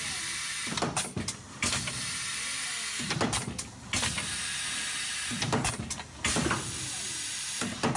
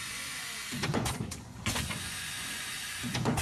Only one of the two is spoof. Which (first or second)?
second